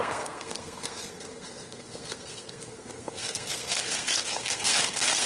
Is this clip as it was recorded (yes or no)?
no